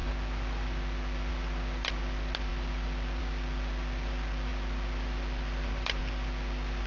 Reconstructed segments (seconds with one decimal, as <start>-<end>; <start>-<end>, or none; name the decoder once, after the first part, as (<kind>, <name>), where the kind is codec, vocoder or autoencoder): none